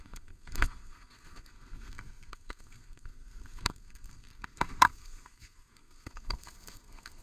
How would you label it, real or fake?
fake